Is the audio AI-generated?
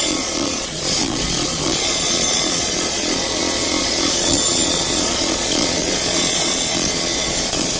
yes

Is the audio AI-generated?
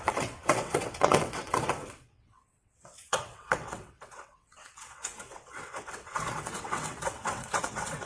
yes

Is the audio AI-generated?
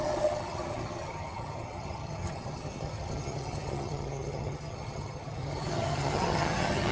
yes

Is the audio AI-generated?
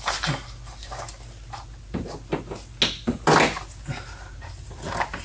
no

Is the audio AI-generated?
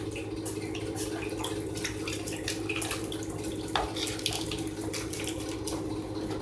no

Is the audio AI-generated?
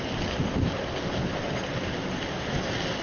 no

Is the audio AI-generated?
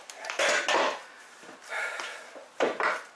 no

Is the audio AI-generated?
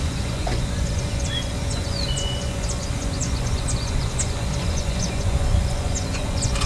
yes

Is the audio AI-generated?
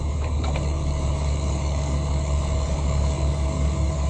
yes